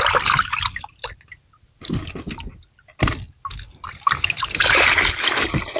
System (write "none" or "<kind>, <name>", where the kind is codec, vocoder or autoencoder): none